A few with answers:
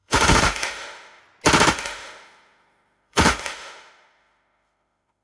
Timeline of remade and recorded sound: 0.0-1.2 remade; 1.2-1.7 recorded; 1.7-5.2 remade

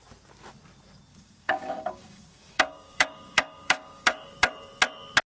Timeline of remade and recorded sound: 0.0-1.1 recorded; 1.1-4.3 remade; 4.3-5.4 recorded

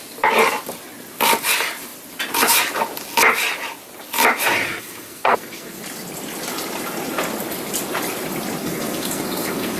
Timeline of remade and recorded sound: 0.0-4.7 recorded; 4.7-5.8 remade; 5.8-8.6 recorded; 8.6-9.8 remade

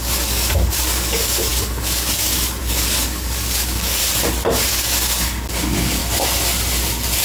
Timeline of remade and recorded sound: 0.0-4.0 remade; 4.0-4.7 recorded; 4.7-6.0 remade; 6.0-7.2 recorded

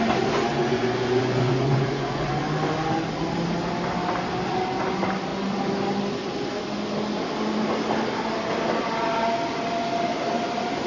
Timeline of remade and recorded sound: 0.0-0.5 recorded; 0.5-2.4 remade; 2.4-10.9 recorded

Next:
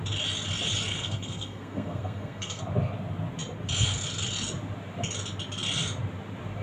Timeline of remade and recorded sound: 0.0-0.9 recorded; 0.9-2.6 remade; 2.6-6.6 recorded

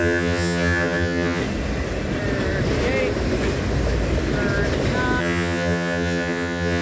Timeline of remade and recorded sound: 0.0-1.4 remade; 1.4-5.2 recorded; 5.2-6.8 remade